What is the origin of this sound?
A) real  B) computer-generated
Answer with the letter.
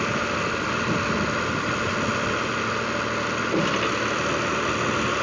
A